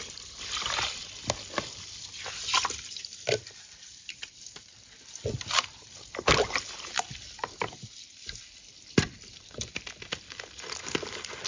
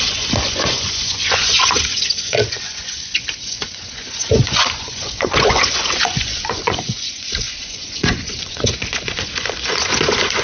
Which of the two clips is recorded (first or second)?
first